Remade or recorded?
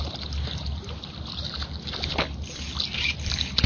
recorded